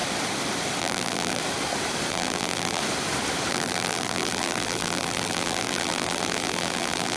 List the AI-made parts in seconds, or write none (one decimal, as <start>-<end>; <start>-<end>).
0.8-1.4; 2.1-2.8; 3.5-7.2